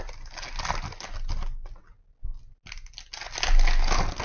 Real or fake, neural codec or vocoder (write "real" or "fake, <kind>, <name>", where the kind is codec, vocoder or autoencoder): real